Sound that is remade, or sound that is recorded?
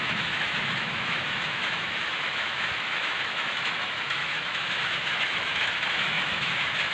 remade